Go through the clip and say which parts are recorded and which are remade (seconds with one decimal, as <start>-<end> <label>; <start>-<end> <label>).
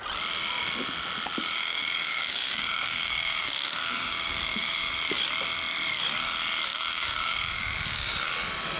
0.0-1.4 recorded; 1.4-4.9 remade; 4.9-6.7 recorded; 6.7-8.3 remade; 8.3-8.8 recorded